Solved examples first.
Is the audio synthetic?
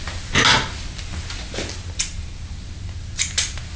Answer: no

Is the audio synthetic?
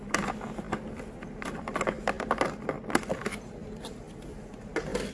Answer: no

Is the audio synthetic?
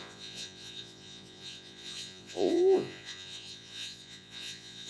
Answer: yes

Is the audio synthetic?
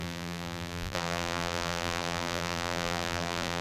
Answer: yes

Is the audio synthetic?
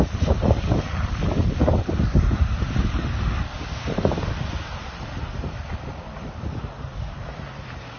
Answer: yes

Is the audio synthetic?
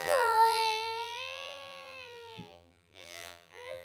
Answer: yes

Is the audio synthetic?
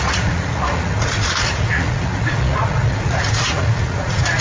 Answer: yes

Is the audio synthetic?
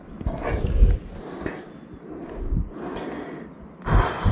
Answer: no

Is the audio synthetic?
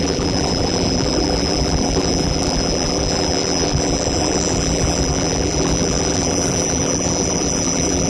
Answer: yes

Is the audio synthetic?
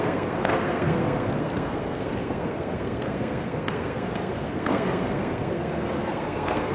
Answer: yes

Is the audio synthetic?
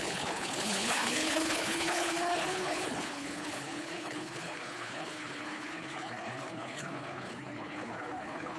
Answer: yes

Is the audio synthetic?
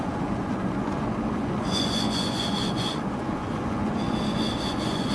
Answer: yes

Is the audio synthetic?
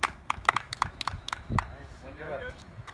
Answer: yes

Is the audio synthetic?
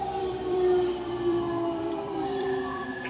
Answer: yes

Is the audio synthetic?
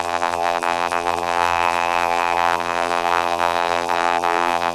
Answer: yes